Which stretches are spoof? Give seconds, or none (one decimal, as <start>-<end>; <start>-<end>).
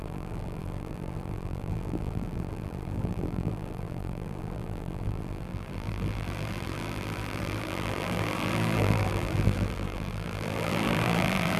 0.0-11.6